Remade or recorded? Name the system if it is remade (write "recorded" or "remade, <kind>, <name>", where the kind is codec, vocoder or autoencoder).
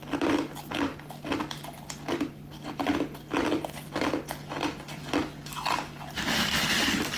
recorded